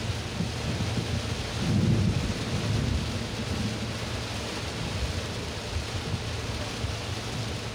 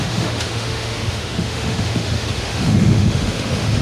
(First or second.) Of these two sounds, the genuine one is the first